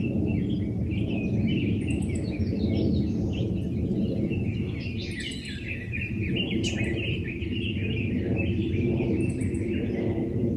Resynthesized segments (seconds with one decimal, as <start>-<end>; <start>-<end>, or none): none